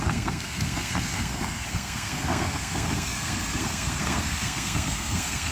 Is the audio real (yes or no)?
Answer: no